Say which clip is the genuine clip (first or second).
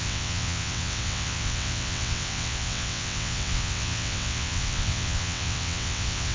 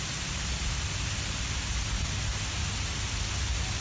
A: second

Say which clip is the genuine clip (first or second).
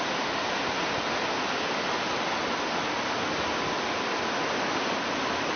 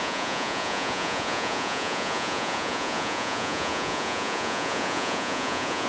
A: first